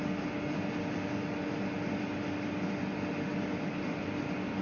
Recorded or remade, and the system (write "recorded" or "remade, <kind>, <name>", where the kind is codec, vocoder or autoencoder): recorded